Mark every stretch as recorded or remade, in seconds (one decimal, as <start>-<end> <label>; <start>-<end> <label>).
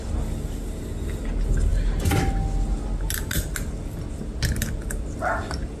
0.0-5.8 recorded